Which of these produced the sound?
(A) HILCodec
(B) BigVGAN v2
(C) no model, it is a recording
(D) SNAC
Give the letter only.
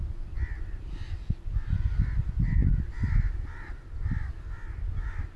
C